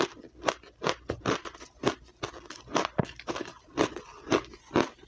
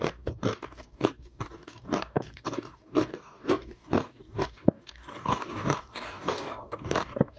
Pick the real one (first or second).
first